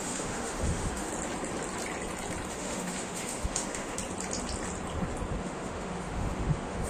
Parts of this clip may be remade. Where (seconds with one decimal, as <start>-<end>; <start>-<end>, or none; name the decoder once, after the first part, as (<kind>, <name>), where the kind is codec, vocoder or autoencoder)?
0.0-1.1 (autoencoder, DAC-VAE); 2.5-4.0; 5.4-6.9

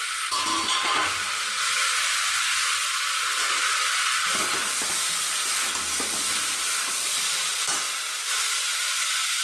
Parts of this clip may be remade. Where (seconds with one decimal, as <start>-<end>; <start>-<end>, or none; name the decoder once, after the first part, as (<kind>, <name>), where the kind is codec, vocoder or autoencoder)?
none

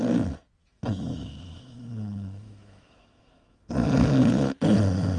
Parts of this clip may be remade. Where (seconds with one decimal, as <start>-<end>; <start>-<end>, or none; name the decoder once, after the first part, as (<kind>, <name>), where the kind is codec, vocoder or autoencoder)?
0.6-3.7 (autoencoder, DAC-VAE)

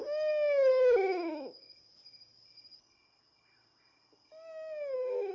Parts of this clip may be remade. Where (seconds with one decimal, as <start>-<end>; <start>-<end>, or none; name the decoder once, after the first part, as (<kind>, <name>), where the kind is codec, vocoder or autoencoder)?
0.7-2.4 (autoencoder, DAC-VAE)

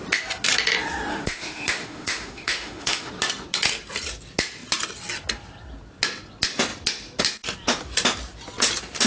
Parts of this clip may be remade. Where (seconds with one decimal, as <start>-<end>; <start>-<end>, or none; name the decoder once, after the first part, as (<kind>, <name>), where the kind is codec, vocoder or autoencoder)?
1.1-3.1 (autoencoder, DAC-VAE)

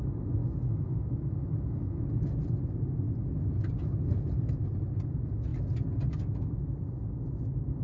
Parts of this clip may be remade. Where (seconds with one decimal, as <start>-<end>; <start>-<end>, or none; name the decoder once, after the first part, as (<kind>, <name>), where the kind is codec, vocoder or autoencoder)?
0.4-2.0 (autoencoder, DAC-VAE)

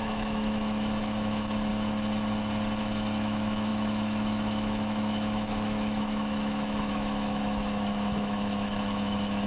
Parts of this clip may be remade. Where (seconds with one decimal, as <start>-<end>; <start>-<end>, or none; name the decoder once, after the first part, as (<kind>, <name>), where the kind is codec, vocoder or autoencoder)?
0.0-1.7 (autoencoder, DAC-VAE); 2.8-9.5